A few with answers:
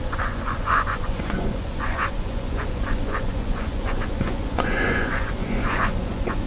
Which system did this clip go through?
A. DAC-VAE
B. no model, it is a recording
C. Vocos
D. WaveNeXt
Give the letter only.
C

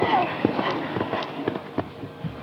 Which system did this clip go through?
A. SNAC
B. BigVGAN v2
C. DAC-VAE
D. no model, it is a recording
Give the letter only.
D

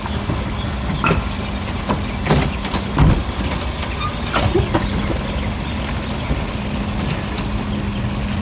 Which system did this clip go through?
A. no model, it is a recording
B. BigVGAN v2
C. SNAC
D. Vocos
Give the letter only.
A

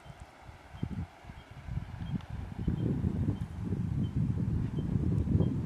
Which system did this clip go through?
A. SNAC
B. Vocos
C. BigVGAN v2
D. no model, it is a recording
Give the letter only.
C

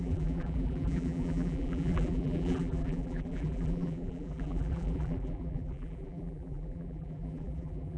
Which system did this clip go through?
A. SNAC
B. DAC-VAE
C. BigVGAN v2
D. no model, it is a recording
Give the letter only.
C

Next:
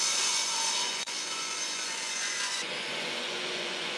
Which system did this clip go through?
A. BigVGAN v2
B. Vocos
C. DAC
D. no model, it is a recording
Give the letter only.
B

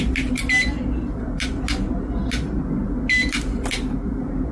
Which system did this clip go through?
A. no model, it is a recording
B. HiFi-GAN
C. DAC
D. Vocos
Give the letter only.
A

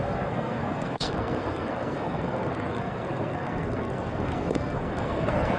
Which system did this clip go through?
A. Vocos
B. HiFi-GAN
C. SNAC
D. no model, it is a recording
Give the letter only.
C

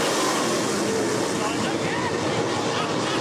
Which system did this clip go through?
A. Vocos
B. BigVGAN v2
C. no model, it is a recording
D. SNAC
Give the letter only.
C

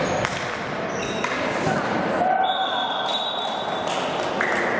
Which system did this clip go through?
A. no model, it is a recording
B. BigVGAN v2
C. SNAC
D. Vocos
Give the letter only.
A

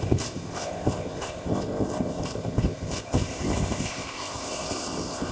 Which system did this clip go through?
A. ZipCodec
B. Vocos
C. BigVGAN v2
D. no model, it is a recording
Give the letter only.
A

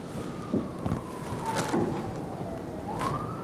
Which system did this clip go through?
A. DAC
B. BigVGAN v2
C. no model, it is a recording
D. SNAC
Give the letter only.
C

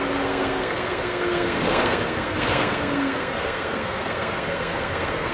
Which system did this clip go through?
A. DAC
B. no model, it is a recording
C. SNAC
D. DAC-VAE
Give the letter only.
C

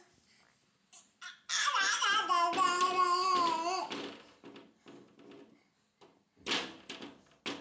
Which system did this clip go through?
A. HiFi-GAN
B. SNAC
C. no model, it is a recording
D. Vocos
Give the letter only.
C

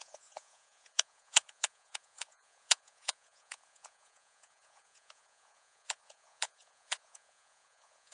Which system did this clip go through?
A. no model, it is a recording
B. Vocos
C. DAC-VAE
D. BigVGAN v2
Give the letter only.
B